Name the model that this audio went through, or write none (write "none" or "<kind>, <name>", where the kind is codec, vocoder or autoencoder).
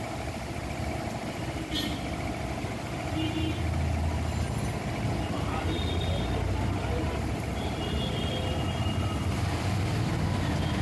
none